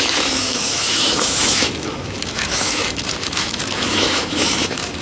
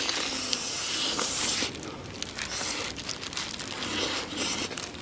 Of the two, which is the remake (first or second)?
first